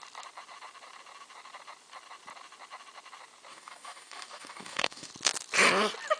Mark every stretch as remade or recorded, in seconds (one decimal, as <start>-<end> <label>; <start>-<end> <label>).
0.0-3.5 recorded; 3.5-5.1 remade; 5.1-6.2 recorded